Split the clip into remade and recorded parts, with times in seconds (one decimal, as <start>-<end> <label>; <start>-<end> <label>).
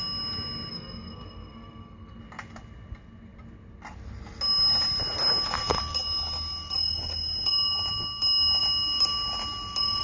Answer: 0.0-0.7 recorded; 0.7-2.2 remade; 2.2-10.0 recorded